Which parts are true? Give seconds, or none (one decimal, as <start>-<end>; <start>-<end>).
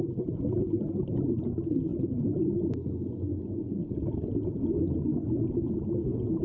0.0-6.4